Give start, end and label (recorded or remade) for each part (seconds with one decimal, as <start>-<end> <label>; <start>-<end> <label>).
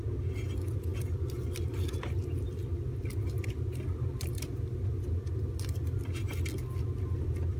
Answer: 0.0-7.6 recorded